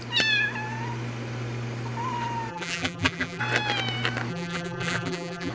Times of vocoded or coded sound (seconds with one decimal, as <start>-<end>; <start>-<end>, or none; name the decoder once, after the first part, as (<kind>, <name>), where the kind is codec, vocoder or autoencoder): 2.5-3.4 (vocoder, BigVGAN v2); 4.3-5.5